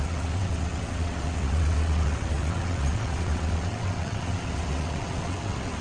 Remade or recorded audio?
remade